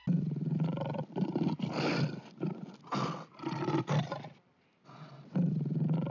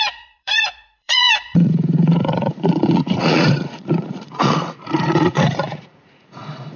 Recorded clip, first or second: first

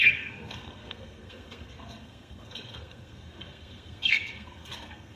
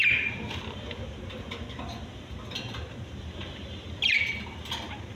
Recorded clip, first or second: second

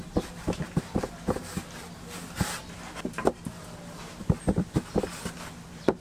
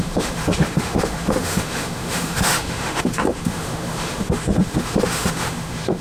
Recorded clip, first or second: first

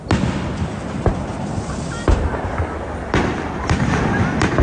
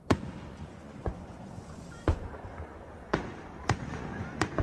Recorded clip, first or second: first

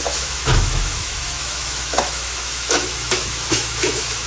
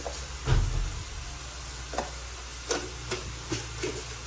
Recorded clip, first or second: second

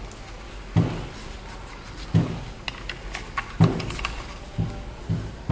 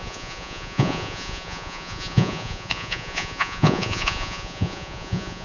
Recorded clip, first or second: first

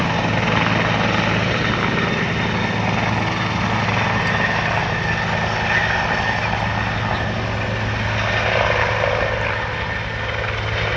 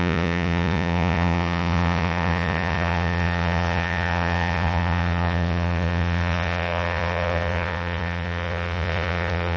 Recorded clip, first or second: first